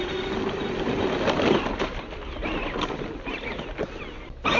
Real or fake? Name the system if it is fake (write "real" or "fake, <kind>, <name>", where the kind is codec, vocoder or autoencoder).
real